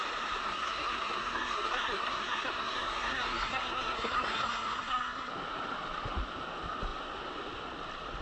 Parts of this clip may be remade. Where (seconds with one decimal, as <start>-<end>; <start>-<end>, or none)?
0.4-5.3